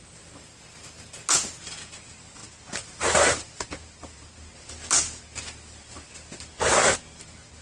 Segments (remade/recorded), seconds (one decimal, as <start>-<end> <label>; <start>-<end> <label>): 0.0-7.6 recorded